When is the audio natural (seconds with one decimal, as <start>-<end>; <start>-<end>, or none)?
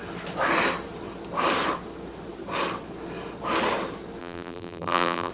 0.0-4.2